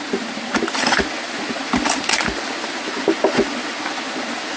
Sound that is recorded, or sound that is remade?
recorded